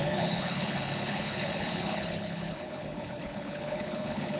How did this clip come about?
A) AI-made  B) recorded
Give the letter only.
A